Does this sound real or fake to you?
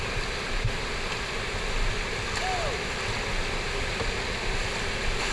real